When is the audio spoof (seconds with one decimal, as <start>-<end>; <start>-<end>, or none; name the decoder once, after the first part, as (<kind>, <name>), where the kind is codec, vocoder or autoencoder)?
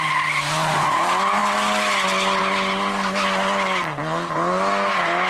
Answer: none